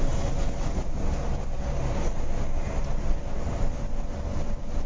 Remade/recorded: recorded